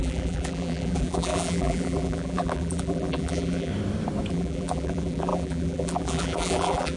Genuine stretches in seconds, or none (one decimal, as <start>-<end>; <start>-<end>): 3.7-4.3